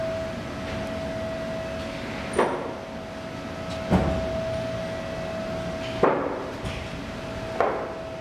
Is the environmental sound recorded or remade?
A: recorded